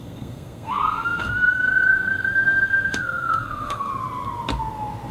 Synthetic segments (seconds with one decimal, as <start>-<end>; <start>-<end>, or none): 0.0-3.9